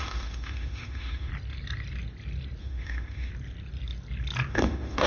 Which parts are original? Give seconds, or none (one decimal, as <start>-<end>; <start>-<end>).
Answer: 1.3-2.6; 3.3-4.5